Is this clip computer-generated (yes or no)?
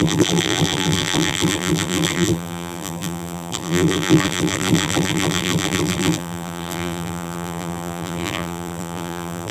yes